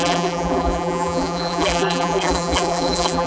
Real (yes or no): no